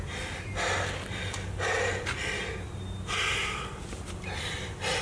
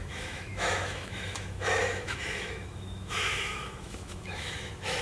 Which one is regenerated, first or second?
second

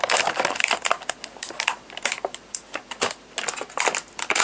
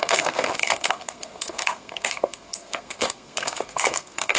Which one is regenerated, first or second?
second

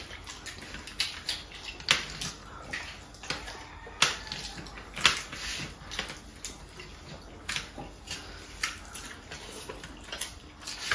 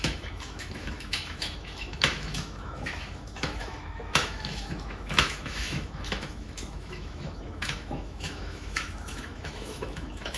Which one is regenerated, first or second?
second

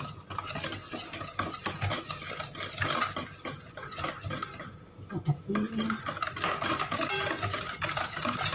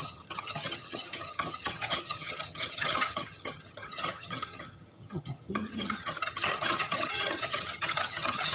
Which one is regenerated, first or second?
second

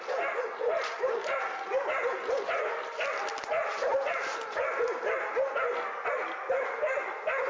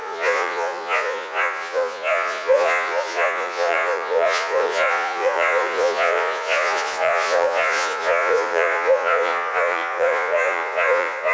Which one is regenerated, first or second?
second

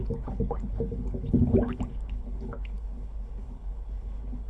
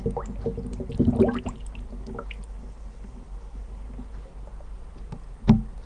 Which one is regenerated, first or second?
first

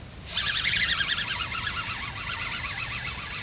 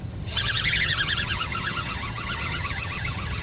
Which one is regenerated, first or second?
second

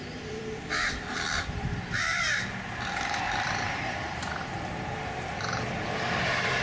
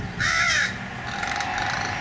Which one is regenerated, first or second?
first